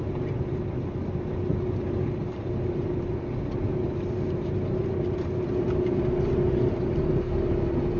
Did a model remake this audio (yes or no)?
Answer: no